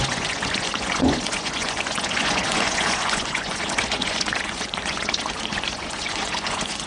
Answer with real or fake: fake